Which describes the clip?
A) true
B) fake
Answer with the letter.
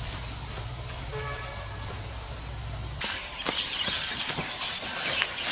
B